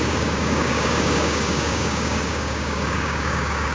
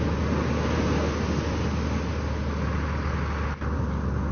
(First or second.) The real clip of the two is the second